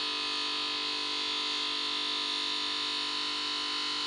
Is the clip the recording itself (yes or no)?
yes